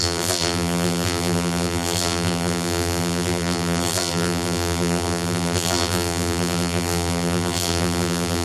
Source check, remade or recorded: remade